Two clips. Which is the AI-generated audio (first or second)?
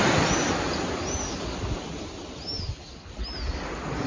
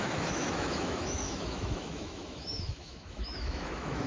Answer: second